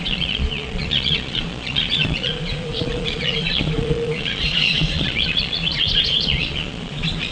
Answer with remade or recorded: remade